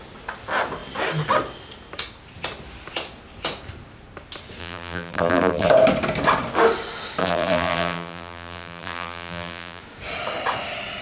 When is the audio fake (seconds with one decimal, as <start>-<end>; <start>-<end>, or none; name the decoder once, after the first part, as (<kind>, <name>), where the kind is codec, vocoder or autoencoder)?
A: 4.6-5.7 (vocoder, BigVGAN v2); 7.2-9.8